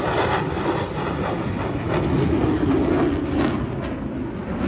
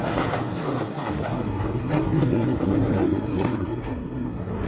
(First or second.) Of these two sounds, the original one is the first